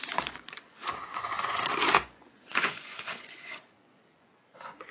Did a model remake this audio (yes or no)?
yes